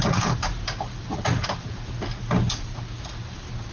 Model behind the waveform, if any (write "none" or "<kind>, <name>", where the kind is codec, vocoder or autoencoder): none